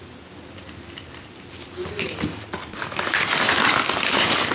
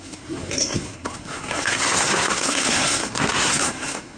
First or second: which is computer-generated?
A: second